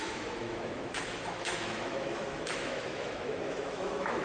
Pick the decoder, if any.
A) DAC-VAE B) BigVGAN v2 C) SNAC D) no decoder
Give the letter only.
A